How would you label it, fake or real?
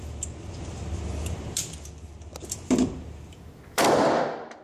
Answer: fake